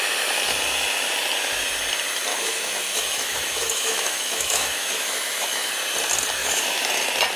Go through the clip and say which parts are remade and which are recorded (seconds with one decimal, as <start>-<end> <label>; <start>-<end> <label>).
0.0-2.3 recorded; 2.3-5.7 remade; 5.7-6.4 recorded; 6.4-6.9 remade; 6.9-7.4 recorded